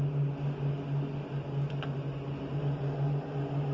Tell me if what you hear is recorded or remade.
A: recorded